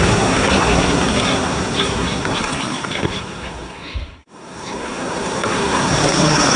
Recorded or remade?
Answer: remade